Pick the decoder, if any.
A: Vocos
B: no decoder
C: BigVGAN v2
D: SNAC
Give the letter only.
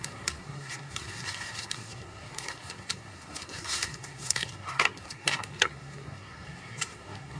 D